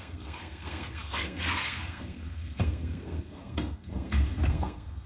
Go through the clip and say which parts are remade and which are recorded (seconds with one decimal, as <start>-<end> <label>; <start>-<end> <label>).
0.0-5.1 remade